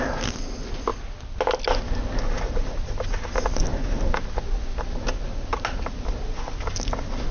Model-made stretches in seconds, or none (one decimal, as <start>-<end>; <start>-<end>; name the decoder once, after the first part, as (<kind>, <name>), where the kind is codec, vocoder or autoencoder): none